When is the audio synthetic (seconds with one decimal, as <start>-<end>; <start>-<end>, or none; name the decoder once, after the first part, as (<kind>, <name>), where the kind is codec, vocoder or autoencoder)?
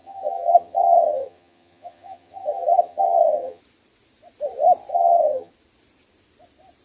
0.0-3.6 (vocoder, HiFi-GAN); 4.9-5.5